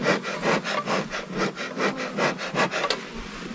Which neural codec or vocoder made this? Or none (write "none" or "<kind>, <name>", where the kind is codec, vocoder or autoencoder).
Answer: none